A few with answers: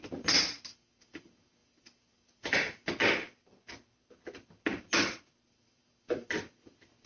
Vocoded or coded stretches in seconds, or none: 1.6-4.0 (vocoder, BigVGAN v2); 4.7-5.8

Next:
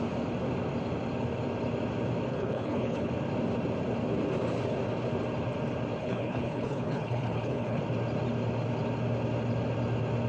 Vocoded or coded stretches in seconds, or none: 2.3-3.1 (codec, HILCodec); 6.0-7.8

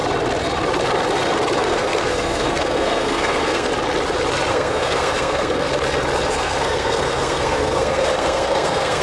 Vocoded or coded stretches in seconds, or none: 1.6-3.7 (codec, SNAC); 4.5-5.7; 6.3-9.0

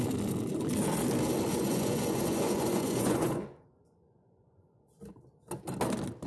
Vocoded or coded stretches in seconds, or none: 1.5-4.9 (vocoder, Vocos)